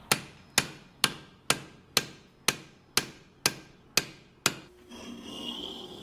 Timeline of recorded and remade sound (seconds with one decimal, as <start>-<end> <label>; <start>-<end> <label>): 0.0-5.3 recorded; 5.3-6.0 remade